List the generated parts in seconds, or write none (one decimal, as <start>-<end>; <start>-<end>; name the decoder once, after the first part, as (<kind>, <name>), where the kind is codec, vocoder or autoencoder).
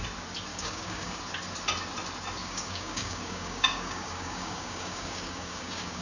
0.5-1.2 (codec, DAC); 2.4-6.0